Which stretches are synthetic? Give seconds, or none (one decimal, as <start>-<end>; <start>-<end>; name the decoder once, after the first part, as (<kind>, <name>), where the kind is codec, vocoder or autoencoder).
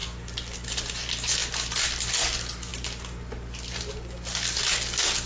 1.4-2.0 (vocoder, BigVGAN v2)